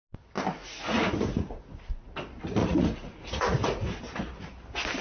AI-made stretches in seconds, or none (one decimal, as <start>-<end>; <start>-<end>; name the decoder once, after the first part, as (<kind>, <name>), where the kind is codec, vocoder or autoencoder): 0.6-2.1 (vocoder, Vocos); 2.6-4.0